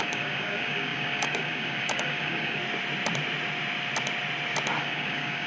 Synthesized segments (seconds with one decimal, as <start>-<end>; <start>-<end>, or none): 0.0-2.6; 4.8-5.5